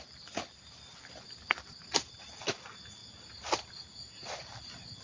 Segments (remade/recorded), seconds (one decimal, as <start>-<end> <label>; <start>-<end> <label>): 0.0-5.0 recorded

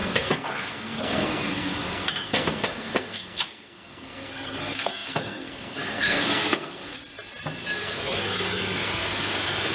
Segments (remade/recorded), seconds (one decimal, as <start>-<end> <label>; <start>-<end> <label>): 0.0-7.0 remade; 7.0-7.8 recorded; 7.8-9.7 remade

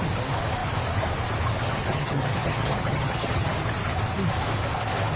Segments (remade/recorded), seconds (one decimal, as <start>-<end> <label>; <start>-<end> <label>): 0.0-1.6 recorded; 1.6-3.5 remade; 3.5-5.2 recorded

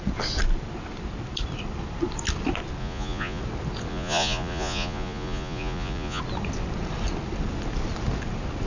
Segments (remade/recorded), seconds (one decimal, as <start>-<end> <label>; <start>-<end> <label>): 0.0-2.8 recorded; 2.8-3.4 remade; 3.4-3.9 recorded; 3.9-6.2 remade; 6.2-8.7 recorded

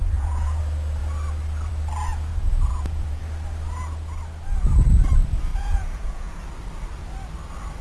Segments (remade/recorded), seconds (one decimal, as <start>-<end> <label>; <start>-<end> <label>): 0.0-0.6 remade; 0.6-2.3 recorded; 2.3-3.2 remade; 3.2-5.5 recorded; 5.5-6.4 remade; 6.4-7.8 recorded

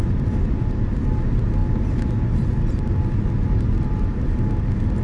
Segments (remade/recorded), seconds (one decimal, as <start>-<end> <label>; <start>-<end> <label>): 0.0-5.0 recorded

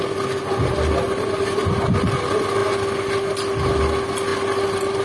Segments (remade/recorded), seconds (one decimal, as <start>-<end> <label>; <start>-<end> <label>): 0.0-5.0 recorded